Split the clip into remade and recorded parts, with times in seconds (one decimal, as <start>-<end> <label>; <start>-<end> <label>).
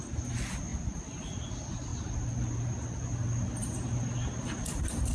0.0-5.1 recorded